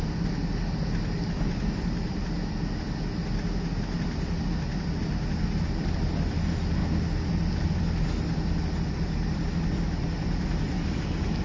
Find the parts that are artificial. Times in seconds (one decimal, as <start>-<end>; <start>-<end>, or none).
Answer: none